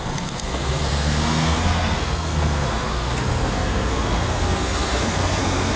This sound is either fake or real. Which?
fake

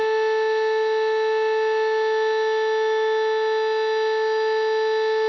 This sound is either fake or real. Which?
real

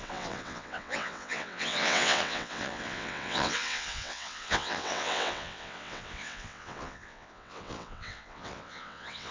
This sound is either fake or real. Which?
fake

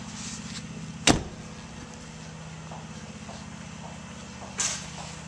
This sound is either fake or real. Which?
real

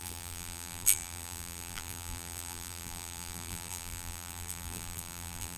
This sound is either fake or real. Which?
fake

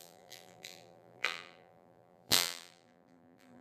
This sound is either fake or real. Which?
fake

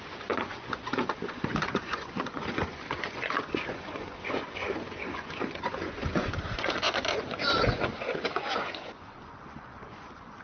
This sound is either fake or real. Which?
fake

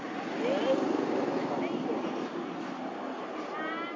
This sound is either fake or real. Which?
real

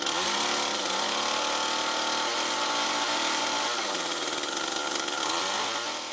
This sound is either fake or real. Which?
real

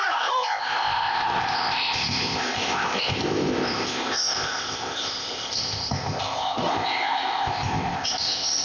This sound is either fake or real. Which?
fake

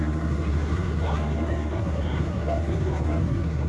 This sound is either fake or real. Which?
fake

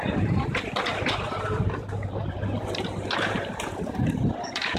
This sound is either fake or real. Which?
fake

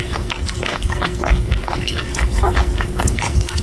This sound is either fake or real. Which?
fake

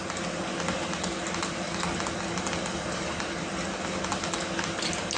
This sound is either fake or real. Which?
real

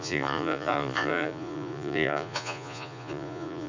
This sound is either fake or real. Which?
fake